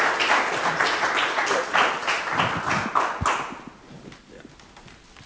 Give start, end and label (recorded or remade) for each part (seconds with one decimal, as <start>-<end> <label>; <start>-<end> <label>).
0.0-5.3 recorded